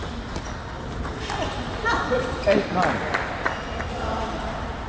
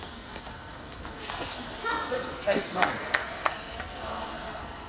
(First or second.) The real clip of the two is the first